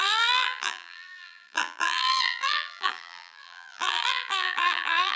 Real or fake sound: fake